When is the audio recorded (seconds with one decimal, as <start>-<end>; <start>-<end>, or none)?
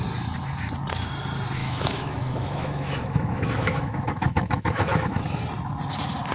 0.0-1.6; 5.4-6.3